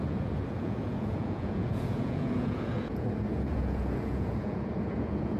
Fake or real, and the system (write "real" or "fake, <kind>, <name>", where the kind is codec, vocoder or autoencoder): fake, vocoder, Vocos